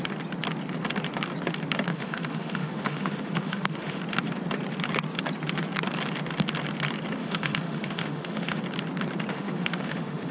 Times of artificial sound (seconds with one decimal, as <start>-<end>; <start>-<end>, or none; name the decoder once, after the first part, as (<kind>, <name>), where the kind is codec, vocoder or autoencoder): 1.9-4.0 (autoencoder, DAC-VAE); 7.2-8.6; 9.3-10.3